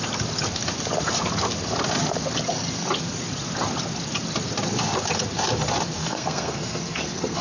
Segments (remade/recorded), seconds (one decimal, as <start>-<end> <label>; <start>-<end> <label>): 0.0-6.0 recorded; 6.0-7.4 remade